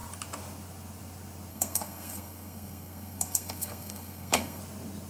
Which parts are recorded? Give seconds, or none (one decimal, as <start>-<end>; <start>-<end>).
0.0-1.5; 4.6-5.1